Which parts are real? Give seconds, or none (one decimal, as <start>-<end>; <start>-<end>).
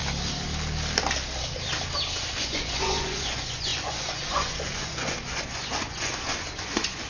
0.0-2.4